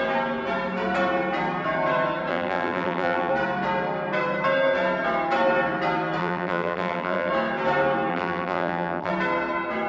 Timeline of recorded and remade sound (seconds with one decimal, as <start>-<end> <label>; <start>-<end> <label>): 0.0-2.3 recorded; 2.3-3.3 remade; 3.3-6.2 recorded; 6.2-7.3 remade; 7.3-8.1 recorded; 8.1-9.1 remade; 9.1-9.9 recorded